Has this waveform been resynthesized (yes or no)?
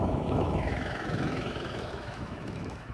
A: yes